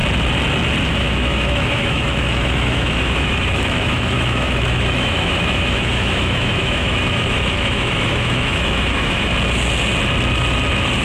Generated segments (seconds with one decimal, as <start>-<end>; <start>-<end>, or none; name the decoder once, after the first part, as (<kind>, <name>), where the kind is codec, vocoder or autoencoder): 0.9-9.3 (autoencoder, DAC-VAE)